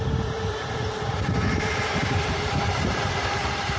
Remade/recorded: remade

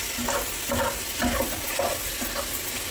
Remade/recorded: recorded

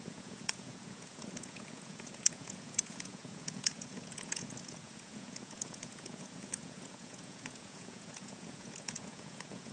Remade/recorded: remade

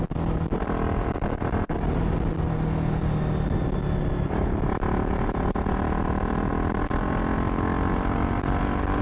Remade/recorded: recorded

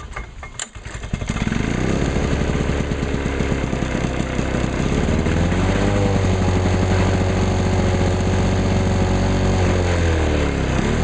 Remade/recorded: recorded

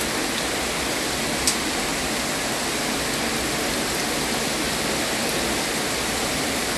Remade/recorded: recorded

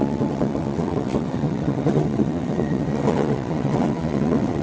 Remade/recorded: remade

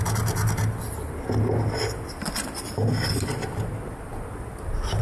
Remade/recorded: recorded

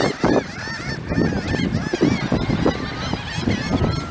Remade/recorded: recorded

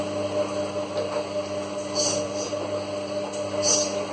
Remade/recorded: recorded